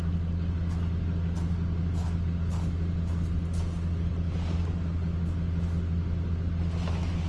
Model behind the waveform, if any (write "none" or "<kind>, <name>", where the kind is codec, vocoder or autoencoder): none